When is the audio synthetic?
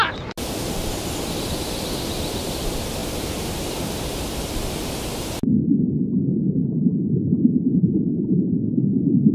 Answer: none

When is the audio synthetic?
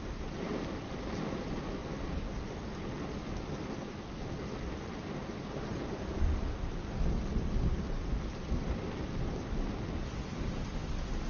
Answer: 5.7-6.5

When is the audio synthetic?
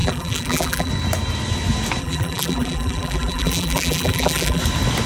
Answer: 0.0-0.9; 2.0-4.6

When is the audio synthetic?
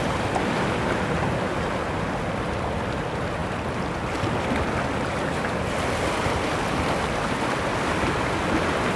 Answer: none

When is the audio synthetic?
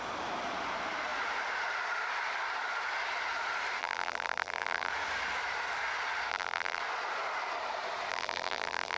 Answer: 3.8-4.9; 6.3-6.8; 8.1-9.0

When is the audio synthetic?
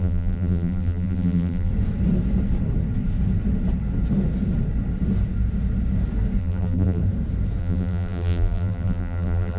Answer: 0.0-1.7; 6.4-7.0; 7.6-9.6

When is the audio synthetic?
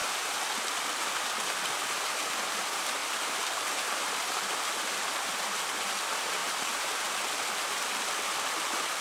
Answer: 6.4-7.2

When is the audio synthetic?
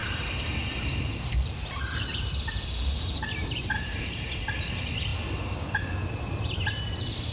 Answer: 0.0-4.4